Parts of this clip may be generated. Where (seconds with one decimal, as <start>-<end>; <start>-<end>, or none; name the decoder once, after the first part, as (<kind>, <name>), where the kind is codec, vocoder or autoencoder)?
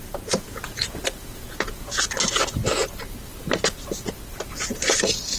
0.0-2.0 (vocoder, Vocos)